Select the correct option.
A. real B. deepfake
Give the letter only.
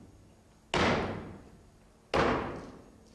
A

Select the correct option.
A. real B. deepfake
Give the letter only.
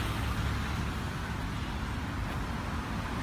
A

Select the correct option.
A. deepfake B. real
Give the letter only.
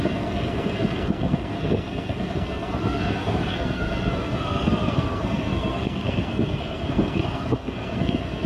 A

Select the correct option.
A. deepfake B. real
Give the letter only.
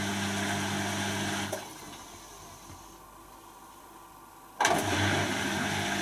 B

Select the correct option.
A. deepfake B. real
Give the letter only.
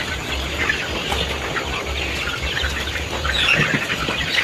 B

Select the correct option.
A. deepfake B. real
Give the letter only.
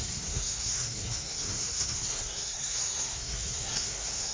A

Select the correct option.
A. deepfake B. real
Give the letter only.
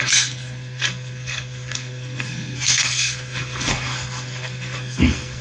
A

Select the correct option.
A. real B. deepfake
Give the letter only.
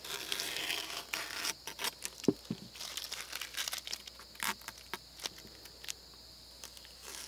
A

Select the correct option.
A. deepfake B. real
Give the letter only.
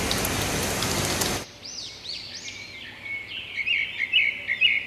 B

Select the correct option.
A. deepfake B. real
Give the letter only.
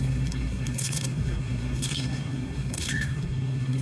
A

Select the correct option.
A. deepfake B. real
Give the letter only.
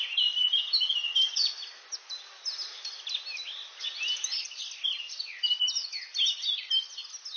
B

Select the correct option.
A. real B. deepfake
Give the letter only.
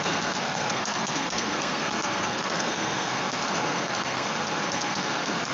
B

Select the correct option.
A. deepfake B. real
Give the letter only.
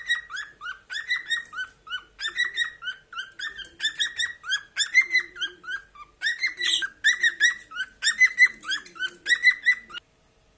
B